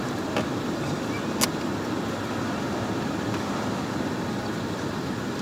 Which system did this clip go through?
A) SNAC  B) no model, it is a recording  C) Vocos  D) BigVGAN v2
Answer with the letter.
B